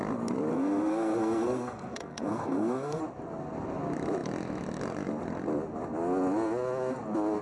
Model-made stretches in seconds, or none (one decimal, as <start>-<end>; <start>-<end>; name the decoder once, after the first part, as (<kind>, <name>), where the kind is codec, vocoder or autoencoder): 0.5-3.0 (codec, SNAC)